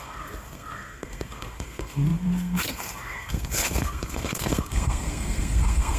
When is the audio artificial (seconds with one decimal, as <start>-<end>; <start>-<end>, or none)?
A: 0.0-6.0